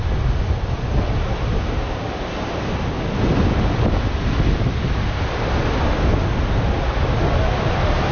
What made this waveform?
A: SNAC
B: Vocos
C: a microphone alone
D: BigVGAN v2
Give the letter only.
C